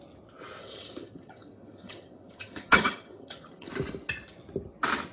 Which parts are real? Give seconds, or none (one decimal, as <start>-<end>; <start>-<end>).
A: 0.0-0.6; 3.7-5.1